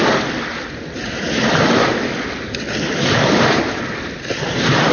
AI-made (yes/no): no